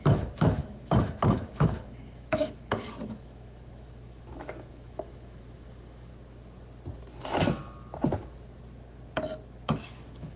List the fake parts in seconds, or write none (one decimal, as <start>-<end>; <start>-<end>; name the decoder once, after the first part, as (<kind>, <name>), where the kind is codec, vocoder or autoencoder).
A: 0.0-6.1 (autoencoder, DAC-VAE); 9.9-10.4